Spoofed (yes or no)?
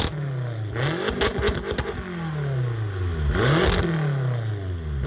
no